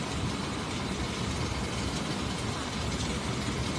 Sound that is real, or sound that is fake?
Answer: real